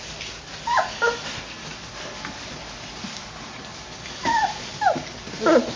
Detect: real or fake real